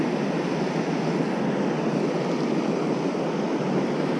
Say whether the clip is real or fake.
real